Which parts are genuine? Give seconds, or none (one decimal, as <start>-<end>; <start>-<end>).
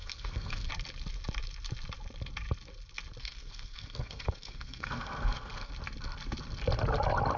0.7-3.2; 5.7-7.4